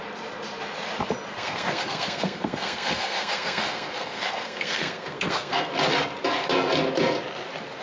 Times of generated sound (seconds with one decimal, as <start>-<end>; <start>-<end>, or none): 1.3-5.7